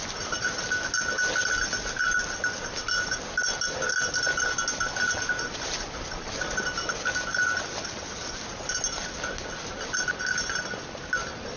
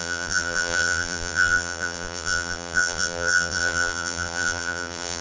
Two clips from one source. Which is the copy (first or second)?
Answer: second